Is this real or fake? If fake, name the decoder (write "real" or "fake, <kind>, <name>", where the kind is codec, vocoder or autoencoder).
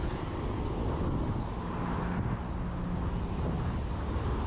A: real